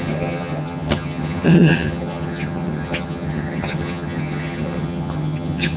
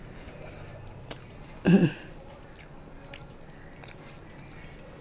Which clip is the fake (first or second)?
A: first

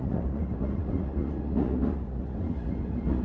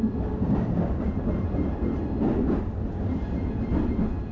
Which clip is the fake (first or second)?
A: first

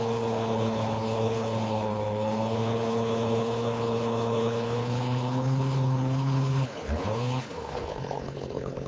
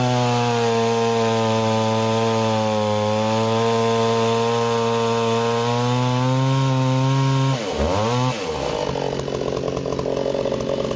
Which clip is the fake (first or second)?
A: first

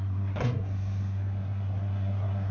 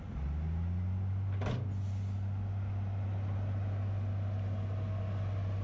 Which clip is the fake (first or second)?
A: first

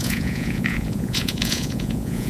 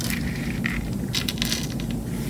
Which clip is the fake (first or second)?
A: first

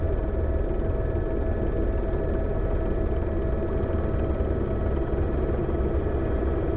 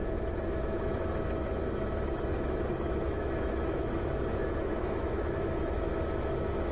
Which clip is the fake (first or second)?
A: second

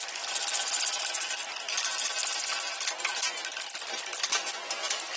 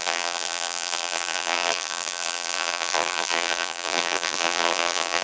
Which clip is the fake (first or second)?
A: second